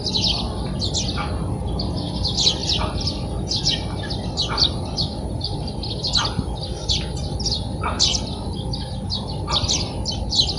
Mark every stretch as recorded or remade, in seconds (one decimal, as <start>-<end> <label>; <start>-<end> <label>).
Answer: 0.0-10.6 recorded

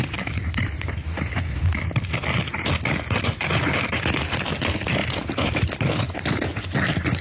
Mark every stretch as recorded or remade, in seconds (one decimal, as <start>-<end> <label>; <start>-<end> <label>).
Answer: 0.0-2.1 remade; 2.1-3.2 recorded; 3.2-5.0 remade; 5.0-6.0 recorded; 6.0-7.2 remade

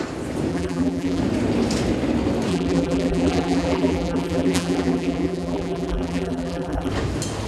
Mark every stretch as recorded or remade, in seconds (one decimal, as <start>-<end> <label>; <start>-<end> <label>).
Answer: 0.0-0.5 recorded; 0.5-1.2 remade; 1.2-2.5 recorded; 2.5-6.9 remade; 6.9-7.5 recorded

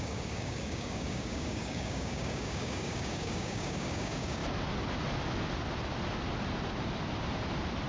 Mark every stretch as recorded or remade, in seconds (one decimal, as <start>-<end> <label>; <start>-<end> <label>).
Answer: 0.0-4.4 remade; 4.4-7.9 recorded

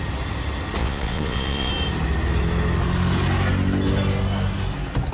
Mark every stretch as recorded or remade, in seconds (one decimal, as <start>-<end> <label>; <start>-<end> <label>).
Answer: 0.0-0.8 recorded; 0.8-1.7 remade; 1.7-5.1 recorded

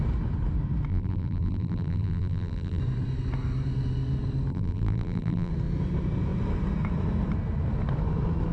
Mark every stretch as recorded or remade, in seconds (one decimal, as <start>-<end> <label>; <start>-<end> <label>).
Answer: 0.0-0.9 recorded; 0.9-2.8 remade; 2.8-4.5 recorded; 4.5-5.5 remade; 5.5-8.5 recorded